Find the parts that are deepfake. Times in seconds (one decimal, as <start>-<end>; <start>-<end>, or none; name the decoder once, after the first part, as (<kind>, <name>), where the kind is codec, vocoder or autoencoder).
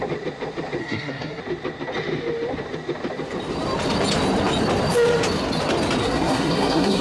0.8-1.4 (codec, SNAC); 6.0-7.0